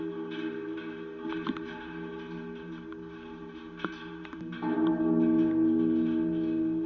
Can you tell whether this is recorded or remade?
recorded